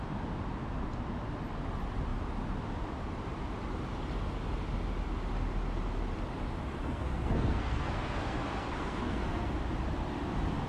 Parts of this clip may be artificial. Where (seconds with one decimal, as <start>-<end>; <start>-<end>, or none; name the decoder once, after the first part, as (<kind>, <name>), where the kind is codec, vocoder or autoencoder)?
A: 6.8-9.5 (codec, SNAC)

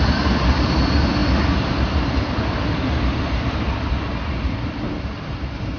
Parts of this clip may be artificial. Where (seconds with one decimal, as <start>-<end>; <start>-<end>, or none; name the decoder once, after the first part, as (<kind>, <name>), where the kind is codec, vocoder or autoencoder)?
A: none

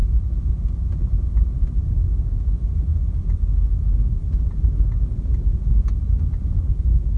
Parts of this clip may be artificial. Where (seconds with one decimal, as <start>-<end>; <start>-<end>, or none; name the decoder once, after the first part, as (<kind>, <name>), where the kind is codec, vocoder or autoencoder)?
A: none

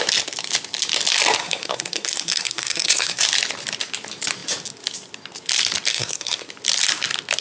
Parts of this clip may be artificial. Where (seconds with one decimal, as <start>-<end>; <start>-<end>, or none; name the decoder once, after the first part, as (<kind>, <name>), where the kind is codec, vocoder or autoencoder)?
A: 1.4-3.2 (codec, SNAC); 5.9-6.5

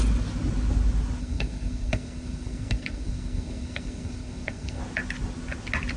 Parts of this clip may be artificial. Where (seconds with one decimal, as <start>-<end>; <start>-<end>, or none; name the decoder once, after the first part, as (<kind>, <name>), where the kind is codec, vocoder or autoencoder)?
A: 1.2-4.8 (codec, SNAC)